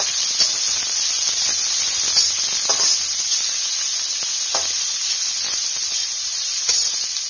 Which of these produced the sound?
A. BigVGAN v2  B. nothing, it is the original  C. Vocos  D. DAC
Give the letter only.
B